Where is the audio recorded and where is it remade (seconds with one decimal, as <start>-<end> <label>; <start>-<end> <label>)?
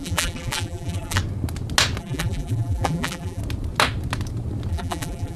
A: 0.0-1.2 remade; 1.2-2.0 recorded; 2.0-3.4 remade; 3.4-4.7 recorded; 4.7-5.4 remade